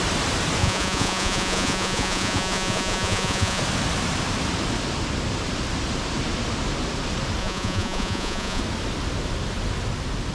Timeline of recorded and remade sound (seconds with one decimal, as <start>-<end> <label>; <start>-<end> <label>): 0.0-0.6 recorded; 0.6-3.6 remade; 3.6-7.4 recorded; 7.4-8.6 remade; 8.6-10.3 recorded